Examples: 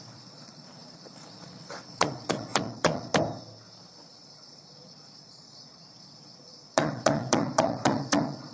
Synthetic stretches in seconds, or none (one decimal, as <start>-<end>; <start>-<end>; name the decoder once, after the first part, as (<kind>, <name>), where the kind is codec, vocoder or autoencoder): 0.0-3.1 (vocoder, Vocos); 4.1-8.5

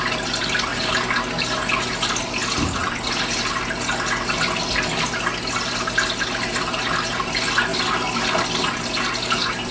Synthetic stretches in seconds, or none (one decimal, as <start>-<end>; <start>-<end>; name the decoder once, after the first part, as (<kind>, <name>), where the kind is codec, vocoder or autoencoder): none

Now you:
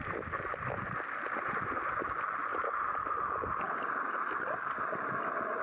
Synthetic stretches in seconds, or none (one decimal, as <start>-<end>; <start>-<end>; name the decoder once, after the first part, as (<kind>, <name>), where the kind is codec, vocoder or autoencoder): none